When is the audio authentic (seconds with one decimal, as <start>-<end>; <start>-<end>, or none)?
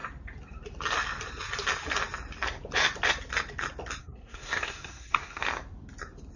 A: 0.0-4.0; 5.4-6.4